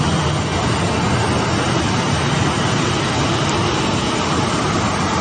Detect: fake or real real